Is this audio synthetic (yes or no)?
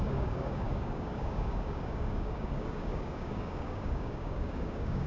yes